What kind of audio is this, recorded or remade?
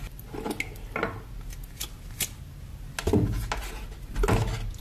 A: recorded